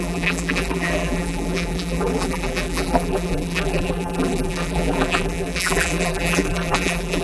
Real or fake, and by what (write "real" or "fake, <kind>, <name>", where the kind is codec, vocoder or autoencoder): fake, vocoder, BigVGAN v2